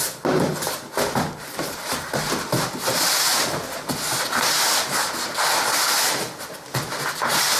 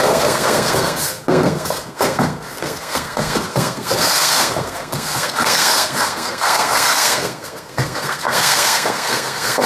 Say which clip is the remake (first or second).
second